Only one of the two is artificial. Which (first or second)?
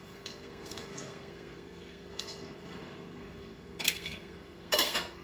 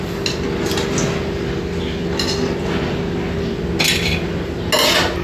first